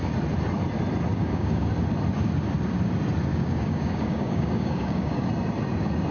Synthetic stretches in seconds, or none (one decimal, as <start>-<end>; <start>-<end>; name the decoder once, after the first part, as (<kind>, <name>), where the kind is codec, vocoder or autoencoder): 1.1-1.7 (codec, DAC); 3.3-5.3